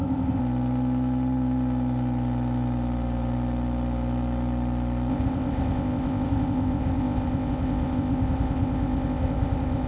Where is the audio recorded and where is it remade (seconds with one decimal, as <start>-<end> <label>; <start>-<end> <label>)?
0.0-0.4 remade; 0.4-5.1 recorded; 5.1-9.9 remade